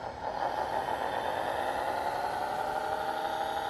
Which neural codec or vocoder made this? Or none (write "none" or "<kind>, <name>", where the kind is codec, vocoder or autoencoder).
none